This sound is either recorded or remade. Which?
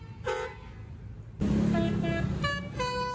recorded